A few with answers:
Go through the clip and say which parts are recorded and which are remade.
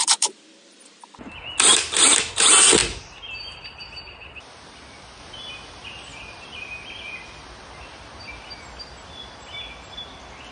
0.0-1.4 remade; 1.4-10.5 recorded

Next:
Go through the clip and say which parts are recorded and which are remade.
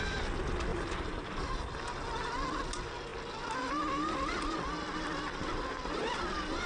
0.0-0.7 recorded; 0.7-1.7 remade; 1.7-6.7 recorded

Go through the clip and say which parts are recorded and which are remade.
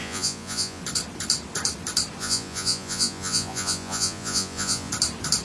0.0-0.8 remade; 0.8-2.2 recorded; 2.2-4.9 remade; 4.9-5.4 recorded